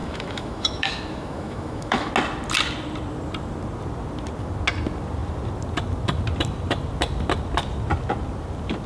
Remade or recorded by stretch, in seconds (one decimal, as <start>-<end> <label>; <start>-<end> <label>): 0.0-2.1 remade; 2.1-8.9 recorded